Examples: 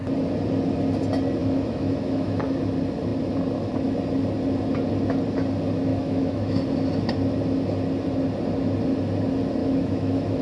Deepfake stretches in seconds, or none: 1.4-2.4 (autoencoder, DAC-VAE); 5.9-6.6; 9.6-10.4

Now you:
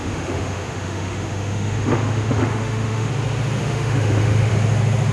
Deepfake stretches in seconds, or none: 0.0-3.1 (autoencoder, DAC-VAE); 3.6-4.5

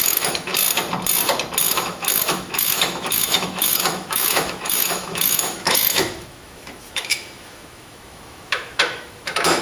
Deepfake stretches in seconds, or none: 0.0-0.5 (autoencoder, DAC-VAE); 1.6-9.6

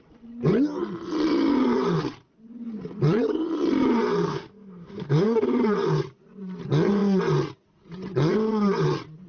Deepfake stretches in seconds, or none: 4.3-5.6 (autoencoder, DAC-VAE)

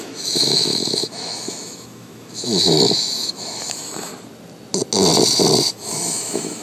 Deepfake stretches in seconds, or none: 0.0-4.1 (autoencoder, DAC-VAE); 5.7-6.6

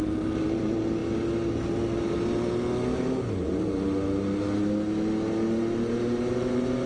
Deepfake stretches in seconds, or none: none